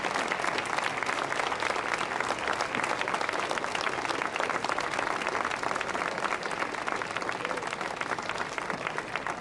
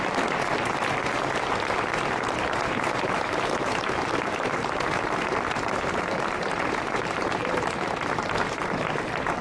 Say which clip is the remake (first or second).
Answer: second